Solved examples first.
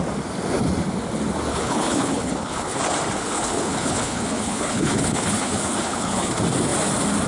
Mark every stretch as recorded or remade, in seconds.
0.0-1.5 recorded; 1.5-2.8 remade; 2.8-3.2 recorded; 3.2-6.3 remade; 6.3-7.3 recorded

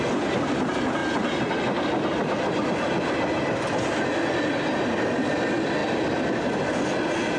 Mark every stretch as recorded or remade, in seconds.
0.0-7.4 recorded

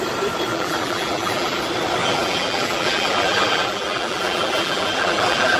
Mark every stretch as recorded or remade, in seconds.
0.0-0.5 recorded; 0.5-1.6 remade; 1.6-2.0 recorded; 2.0-5.6 remade